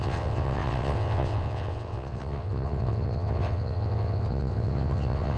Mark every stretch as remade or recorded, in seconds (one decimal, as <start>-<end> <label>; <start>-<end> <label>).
0.0-5.4 remade